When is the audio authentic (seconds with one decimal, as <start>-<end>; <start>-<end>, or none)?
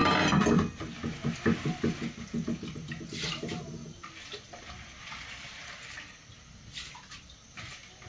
0.0-8.1